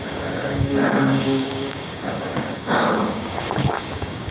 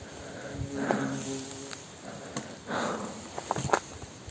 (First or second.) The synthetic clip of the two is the first